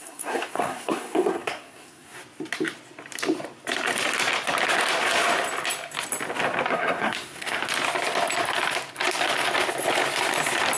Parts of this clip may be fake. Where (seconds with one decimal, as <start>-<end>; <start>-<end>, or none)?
0.0-2.2; 6.7-7.6